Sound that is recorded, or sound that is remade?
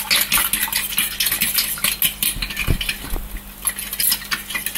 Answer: recorded